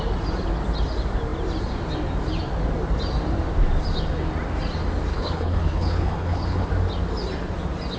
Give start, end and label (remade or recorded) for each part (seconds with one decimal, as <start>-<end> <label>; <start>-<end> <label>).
0.0-5.1 recorded; 5.1-6.7 remade; 6.7-8.0 recorded